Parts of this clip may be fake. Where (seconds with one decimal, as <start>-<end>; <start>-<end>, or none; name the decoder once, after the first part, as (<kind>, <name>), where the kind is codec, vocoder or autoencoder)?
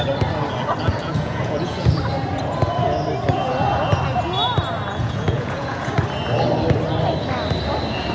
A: 0.9-2.0 (vocoder, Vocos); 5.0-5.9